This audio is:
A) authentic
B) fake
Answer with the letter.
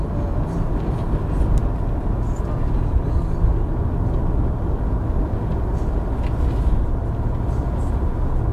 A